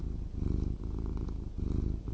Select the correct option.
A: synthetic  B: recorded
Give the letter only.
B